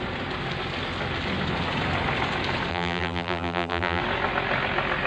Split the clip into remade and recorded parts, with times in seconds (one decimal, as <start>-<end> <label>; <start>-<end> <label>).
0.0-2.7 recorded; 2.7-4.0 remade; 4.0-5.1 recorded